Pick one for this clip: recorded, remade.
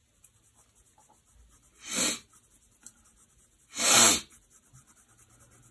recorded